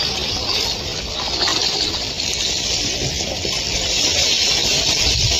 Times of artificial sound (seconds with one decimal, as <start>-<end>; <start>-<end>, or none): none